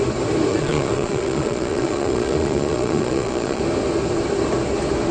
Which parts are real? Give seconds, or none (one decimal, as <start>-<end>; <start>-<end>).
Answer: 0.0-0.5; 3.6-5.1